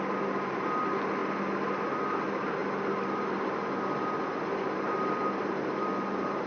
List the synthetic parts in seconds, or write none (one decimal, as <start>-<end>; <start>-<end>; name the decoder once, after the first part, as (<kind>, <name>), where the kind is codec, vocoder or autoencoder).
none